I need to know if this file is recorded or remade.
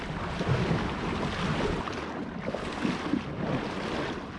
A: recorded